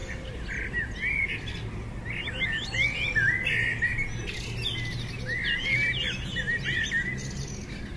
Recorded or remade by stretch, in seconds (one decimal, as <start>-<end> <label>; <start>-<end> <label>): 0.0-8.0 recorded